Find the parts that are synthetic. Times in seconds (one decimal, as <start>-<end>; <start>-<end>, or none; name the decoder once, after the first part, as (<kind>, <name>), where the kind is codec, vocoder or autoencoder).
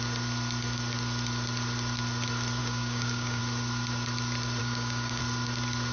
2.6-3.4 (codec, DAC); 4.6-5.2